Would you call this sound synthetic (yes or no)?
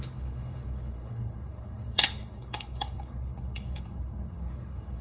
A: yes